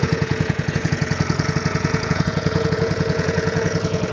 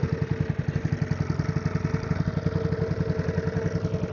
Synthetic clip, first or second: first